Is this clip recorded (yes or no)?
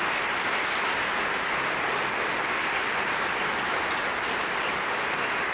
yes